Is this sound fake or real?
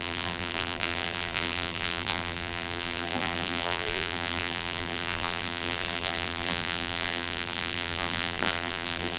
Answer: fake